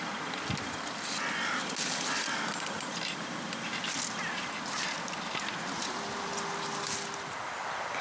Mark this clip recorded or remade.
recorded